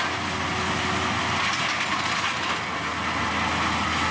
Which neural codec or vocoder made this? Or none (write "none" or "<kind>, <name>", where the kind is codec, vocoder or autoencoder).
none